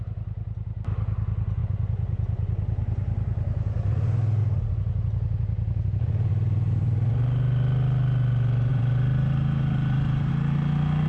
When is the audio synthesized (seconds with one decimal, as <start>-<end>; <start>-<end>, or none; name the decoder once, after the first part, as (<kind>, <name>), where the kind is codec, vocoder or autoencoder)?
1.6-3.9 (vocoder, BigVGAN v2); 8.7-10.3